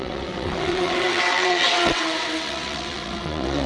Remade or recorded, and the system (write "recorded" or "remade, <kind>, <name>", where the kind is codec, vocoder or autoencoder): remade, vocoder, WaveNeXt